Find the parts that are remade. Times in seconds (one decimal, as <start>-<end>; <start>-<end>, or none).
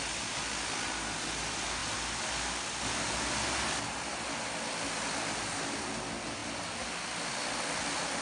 none